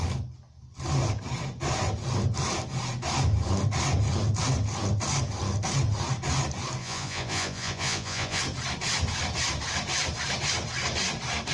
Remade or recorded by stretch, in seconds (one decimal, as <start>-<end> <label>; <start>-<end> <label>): 0.0-6.8 recorded; 6.8-8.4 remade; 8.4-11.5 recorded